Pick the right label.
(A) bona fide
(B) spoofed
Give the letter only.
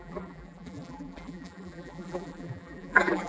B